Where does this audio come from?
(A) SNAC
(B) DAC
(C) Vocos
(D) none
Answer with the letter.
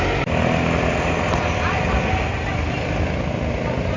D